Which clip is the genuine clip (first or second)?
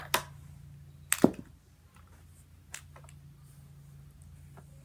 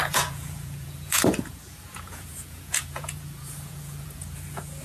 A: first